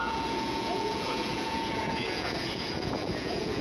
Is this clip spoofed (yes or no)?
yes